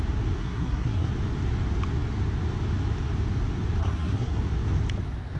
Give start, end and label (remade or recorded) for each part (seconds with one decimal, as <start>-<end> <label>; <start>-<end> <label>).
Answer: 0.0-0.4 recorded; 0.4-1.1 remade; 1.1-3.8 recorded; 3.8-4.4 remade; 4.4-5.4 recorded